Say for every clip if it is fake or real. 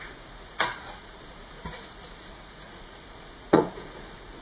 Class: fake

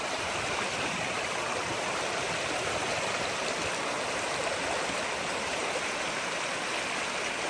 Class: real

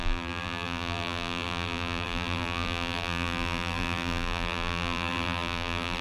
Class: fake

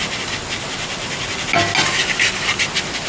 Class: real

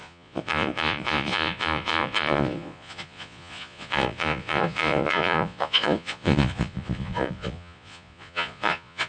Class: fake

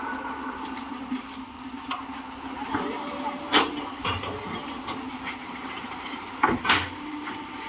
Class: fake